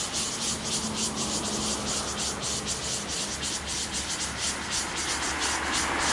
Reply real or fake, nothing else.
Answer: real